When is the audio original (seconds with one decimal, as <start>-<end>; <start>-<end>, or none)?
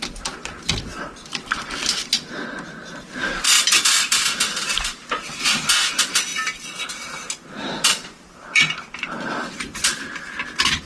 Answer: 0.0-10.9